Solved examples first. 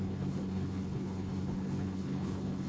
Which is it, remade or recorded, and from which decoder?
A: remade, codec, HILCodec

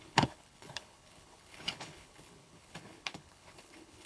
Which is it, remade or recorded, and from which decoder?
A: remade, codec, HILCodec